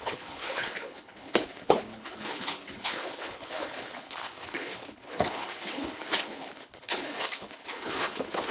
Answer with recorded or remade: remade